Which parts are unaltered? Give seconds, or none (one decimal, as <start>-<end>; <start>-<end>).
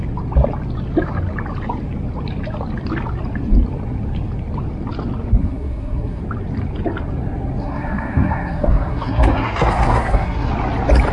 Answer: 0.0-5.4; 6.2-7.6; 10.5-11.1